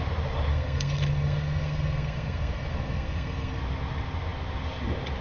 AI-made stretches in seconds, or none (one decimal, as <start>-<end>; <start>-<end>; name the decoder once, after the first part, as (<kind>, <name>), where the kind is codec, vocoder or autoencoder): 0.5-3.6 (codec, SNAC)